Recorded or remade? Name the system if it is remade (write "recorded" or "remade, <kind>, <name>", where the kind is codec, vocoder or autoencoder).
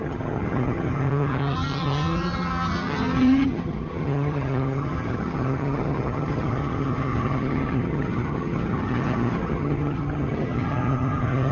remade, vocoder, HiFi-GAN